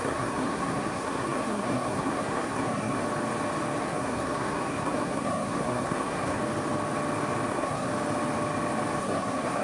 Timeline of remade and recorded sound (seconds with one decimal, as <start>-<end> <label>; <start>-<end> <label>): 0.0-3.0 remade; 3.0-3.8 recorded; 3.8-6.4 remade; 6.4-7.5 recorded; 7.5-7.9 remade; 7.9-9.0 recorded; 9.0-9.6 remade